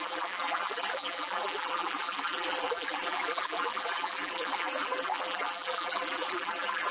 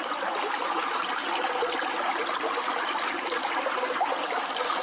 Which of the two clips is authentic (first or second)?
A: second